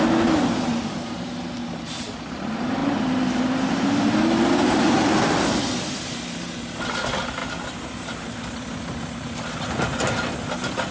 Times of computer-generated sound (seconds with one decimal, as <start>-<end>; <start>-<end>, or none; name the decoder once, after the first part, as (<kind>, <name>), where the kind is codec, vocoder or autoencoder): none